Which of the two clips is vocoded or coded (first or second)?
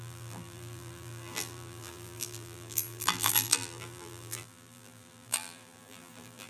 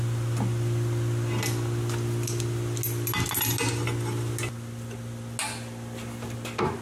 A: first